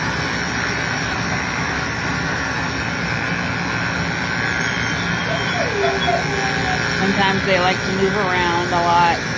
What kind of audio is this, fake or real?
real